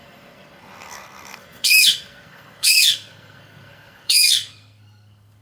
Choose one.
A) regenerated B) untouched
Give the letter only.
A